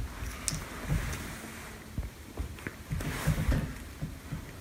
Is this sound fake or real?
real